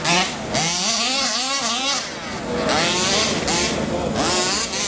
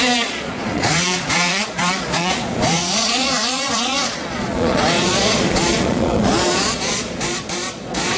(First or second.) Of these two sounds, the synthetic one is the second